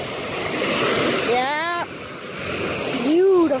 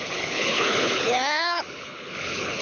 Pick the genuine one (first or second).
first